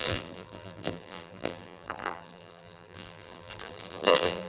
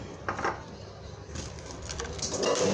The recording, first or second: second